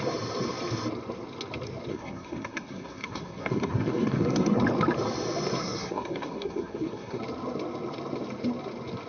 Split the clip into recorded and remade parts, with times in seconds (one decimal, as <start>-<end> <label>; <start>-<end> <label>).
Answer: 0.0-1.9 recorded; 1.9-4.6 remade; 4.6-5.6 recorded; 5.6-7.2 remade; 7.2-9.1 recorded